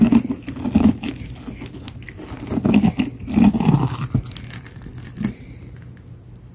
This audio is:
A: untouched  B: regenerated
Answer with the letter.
A